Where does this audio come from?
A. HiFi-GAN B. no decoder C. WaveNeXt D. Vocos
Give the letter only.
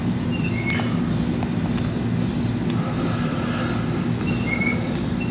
B